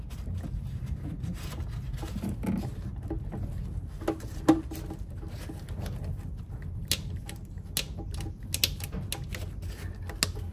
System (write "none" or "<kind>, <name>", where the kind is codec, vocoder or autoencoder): none